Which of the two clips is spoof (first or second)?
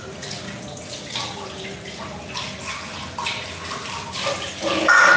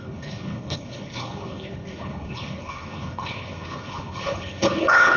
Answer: second